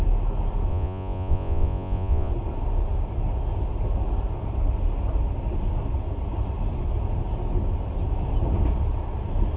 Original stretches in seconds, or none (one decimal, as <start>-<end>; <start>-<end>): 0.0-0.7; 2.3-9.6